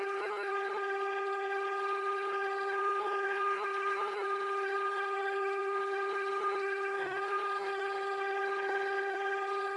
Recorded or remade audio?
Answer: remade